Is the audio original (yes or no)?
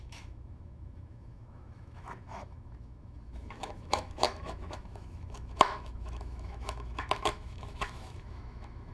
no